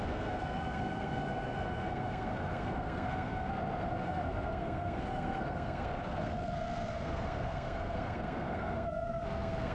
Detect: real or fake fake